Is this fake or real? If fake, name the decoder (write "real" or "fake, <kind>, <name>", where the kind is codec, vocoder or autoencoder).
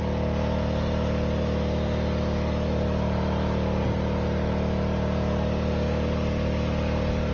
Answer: real